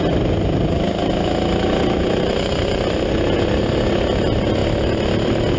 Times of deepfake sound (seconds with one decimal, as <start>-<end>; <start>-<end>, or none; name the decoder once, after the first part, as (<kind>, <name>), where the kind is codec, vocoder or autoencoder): none